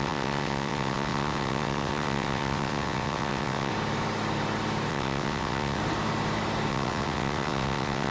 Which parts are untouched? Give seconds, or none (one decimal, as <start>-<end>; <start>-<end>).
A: 3.7-4.9; 5.8-6.7